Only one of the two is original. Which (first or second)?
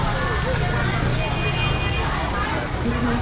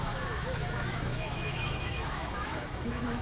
first